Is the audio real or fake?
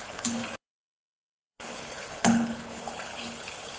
fake